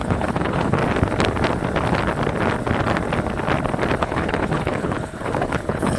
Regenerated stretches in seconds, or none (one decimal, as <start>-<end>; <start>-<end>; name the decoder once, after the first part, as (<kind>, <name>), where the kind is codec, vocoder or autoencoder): 0.0-0.8 (codec, HILCodec); 4.0-6.0